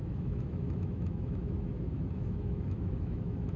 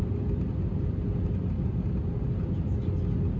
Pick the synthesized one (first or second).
first